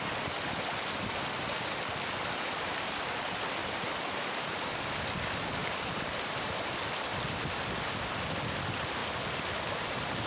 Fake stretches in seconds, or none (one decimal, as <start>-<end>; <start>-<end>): 3.6-4.5; 5.6-6.8; 9.0-10.3